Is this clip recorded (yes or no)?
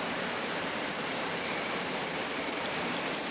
no